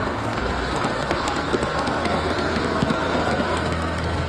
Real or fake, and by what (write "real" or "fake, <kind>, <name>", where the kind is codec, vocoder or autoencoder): fake, codec, SNAC